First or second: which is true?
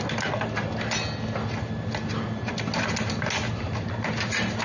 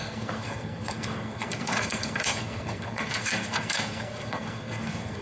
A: first